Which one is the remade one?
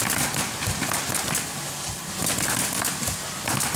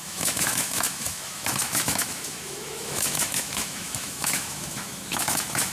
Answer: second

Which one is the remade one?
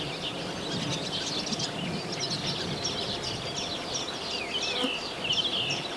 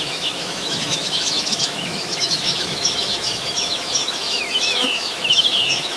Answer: second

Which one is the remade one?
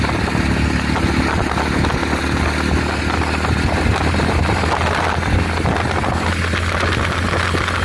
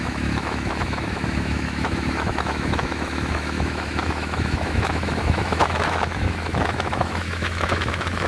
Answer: second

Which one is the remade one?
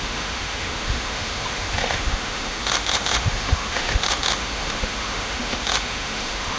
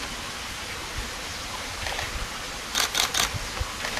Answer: first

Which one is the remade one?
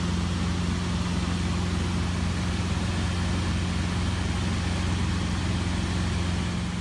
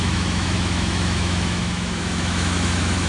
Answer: second